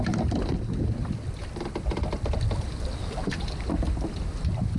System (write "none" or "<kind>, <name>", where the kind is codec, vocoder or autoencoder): none